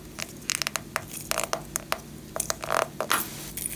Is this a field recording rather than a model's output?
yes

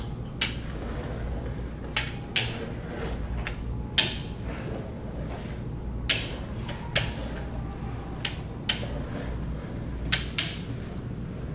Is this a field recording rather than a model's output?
yes